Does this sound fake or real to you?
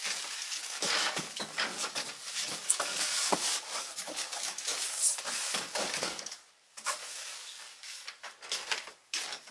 fake